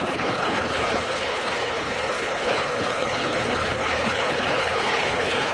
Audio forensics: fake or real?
fake